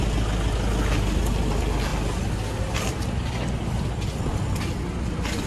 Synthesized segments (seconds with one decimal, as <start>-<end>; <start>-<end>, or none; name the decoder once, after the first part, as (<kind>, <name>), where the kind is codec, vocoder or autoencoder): none